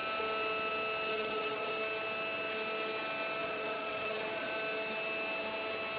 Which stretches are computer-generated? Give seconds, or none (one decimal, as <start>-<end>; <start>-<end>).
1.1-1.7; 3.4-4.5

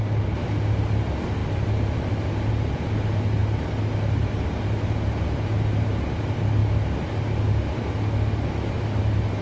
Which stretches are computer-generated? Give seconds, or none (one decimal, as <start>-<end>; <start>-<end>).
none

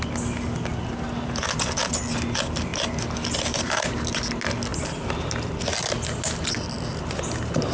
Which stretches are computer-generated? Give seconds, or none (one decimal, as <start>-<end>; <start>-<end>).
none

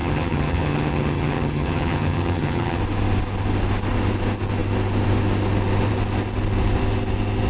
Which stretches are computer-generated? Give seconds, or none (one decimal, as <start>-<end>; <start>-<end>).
0.0-2.8

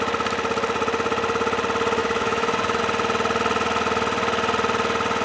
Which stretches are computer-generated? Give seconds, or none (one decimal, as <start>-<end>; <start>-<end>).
2.0-2.8

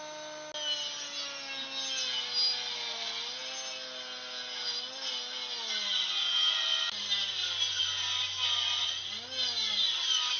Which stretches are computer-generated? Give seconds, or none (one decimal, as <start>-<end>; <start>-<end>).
none